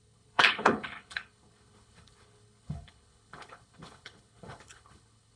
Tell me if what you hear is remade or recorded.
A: remade